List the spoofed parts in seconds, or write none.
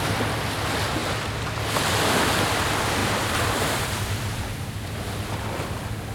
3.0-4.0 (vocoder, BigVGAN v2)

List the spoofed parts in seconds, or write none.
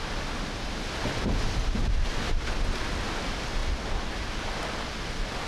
none